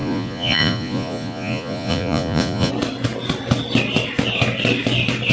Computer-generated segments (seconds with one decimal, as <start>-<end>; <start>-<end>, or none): 0.0-2.7

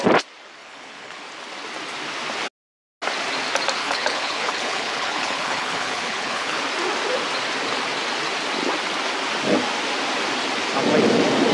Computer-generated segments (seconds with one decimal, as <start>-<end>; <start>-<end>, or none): 0.6-1.2; 3.8-6.6

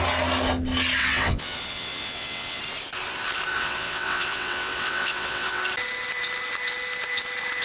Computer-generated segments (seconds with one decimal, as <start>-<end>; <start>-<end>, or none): 1.0-2.6; 3.5-5.6

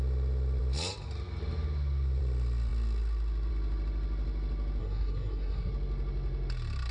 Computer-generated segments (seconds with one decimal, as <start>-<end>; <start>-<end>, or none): 4.8-5.7